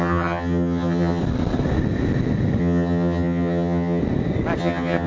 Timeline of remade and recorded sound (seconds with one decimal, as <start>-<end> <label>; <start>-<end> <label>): 0.0-1.2 remade; 1.2-2.6 recorded; 2.6-4.0 remade; 4.0-4.6 recorded; 4.6-5.1 remade